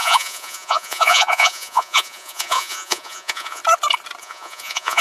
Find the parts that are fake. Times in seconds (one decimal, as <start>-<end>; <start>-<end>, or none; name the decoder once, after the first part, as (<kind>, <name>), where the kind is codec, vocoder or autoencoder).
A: 0.0-3.6 (vocoder, Vocos); 4.2-5.0